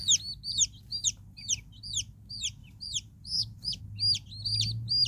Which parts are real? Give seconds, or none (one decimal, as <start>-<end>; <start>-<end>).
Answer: 0.0-0.9; 1.5-2.6; 3.8-5.1